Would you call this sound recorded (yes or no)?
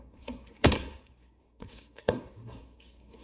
no